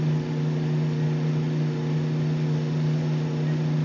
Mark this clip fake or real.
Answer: real